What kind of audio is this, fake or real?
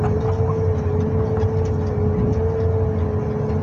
real